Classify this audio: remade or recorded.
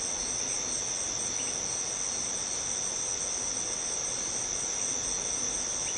recorded